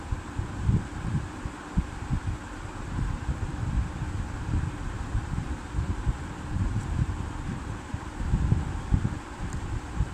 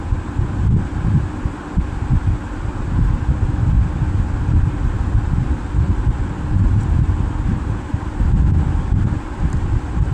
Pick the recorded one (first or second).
second